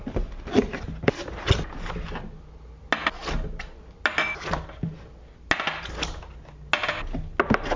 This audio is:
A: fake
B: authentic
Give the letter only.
B